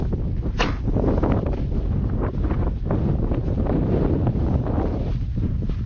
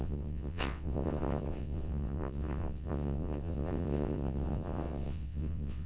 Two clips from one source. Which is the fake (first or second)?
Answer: second